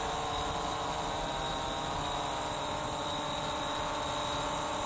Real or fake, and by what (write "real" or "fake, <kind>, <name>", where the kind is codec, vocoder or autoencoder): real